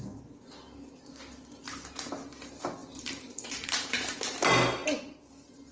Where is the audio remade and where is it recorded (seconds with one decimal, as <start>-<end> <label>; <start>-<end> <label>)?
0.0-1.6 recorded; 1.6-2.1 remade; 2.1-2.8 recorded; 2.8-4.2 remade; 4.2-5.7 recorded